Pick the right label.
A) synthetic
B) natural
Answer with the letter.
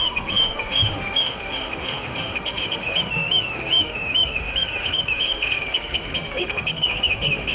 A